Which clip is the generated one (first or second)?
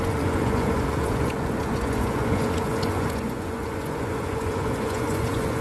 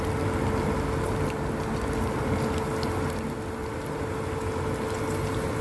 first